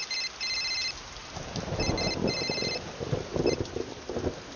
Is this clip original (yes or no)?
yes